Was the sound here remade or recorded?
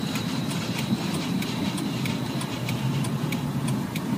remade